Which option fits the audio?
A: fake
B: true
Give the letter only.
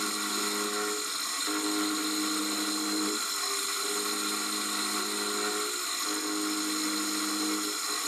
B